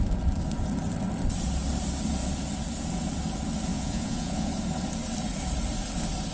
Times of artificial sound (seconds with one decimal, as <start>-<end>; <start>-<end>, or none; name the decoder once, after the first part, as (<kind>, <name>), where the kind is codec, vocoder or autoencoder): 3.7-4.5 (vocoder, Vocos)